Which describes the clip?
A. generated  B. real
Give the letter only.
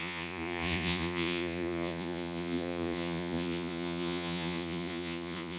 A